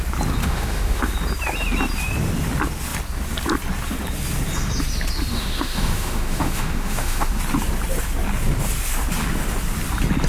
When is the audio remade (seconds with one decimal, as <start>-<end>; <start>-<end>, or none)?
0.4-1.0; 5.3-7.4